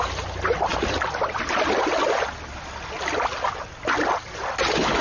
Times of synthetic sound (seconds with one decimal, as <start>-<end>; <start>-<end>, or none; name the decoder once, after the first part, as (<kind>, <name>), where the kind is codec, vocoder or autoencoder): none